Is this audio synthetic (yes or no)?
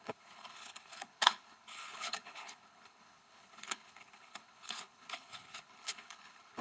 yes